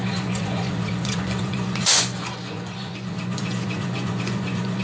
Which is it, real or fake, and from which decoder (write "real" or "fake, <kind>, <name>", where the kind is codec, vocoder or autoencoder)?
fake, vocoder, Vocos